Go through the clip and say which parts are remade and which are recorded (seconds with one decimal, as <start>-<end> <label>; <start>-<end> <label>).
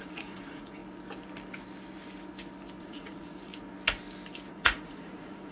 0.0-0.8 remade; 0.8-2.8 recorded; 2.8-3.5 remade; 3.5-4.5 recorded; 4.5-5.5 remade